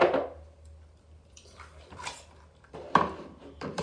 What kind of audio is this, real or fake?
real